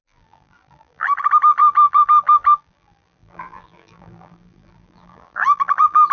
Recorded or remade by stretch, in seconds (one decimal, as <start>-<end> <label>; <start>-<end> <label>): 0.0-6.1 remade